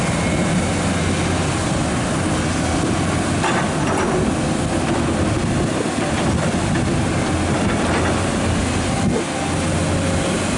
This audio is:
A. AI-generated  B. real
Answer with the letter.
B